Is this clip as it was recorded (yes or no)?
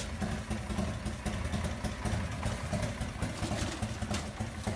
yes